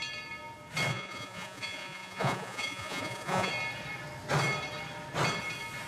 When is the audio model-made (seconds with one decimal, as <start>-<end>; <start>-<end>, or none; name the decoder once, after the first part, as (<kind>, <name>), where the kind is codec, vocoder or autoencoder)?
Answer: 0.9-3.5 (vocoder, Vocos)